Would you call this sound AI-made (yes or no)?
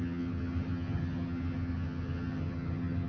yes